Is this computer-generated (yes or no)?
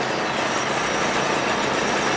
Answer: no